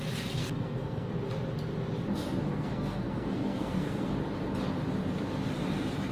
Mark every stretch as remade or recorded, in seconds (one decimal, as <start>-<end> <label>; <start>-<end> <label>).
0.0-0.4 recorded; 0.4-1.1 remade; 1.1-2.5 recorded; 2.5-4.1 remade; 4.1-6.1 recorded